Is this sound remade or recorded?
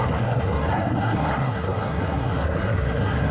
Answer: remade